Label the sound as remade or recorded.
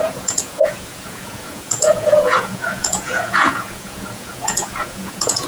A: remade